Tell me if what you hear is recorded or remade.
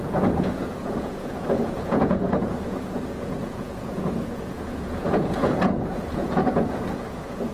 remade